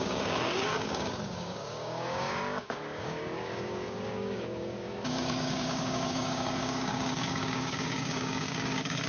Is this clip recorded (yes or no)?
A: no